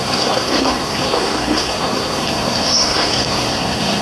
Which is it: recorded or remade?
remade